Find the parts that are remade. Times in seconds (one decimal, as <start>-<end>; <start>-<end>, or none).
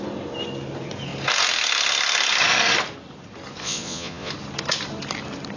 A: 3.6-4.3